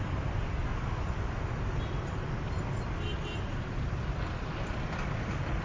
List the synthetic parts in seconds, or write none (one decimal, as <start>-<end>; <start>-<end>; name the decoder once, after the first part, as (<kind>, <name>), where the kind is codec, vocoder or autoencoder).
0.0-0.7 (vocoder, BigVGAN v2); 4.1-5.6